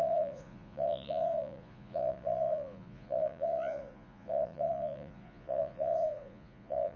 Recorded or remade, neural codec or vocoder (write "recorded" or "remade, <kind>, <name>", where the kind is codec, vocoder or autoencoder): remade, vocoder, Vocos